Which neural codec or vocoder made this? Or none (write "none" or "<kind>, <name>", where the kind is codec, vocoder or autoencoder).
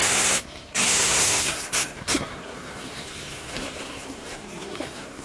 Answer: codec, SNAC